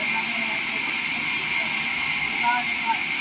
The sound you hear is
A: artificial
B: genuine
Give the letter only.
B